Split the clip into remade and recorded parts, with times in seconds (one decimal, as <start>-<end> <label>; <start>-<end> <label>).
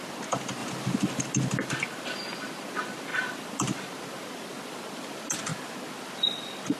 0.0-6.8 recorded